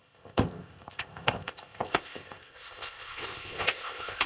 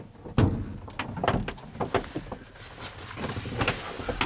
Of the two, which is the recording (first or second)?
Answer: second